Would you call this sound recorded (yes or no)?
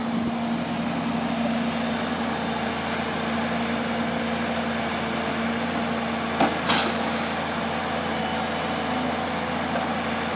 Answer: yes